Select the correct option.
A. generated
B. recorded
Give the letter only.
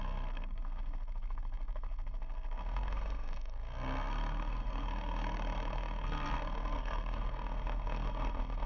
A